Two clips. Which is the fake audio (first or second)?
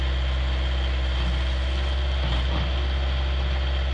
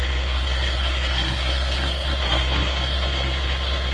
second